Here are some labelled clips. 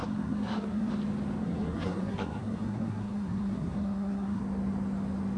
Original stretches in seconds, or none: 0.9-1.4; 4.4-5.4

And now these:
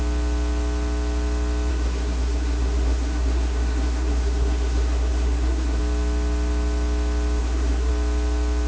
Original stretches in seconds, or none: 0.0-1.7; 5.8-7.4; 7.9-8.7

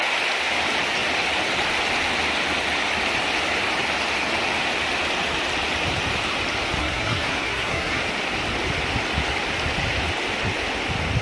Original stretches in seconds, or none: 0.0-6.8; 8.0-11.2

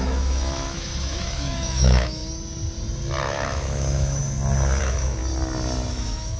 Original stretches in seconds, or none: 2.2-3.2; 4.2-4.8; 5.2-5.9

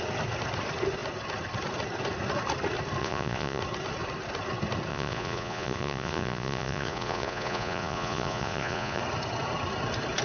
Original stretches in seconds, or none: 0.0-3.0; 3.6-4.9; 9.0-10.2

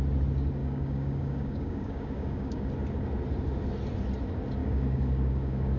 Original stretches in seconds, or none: 0.0-0.6; 2.7-4.6

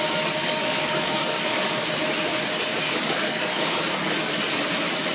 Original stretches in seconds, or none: 0.0-0.4; 1.9-2.8; 4.3-5.1